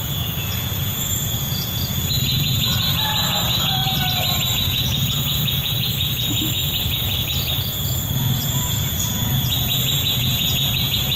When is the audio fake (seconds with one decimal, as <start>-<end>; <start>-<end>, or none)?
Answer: 0.0-3.8; 4.5-6.6; 7.5-11.2